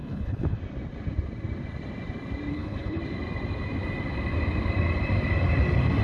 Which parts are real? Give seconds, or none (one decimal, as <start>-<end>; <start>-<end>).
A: 0.6-2.5; 3.0-6.0